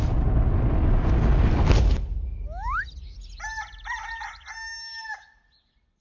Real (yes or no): yes